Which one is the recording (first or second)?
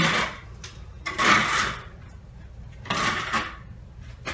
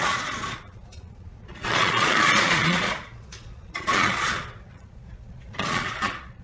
first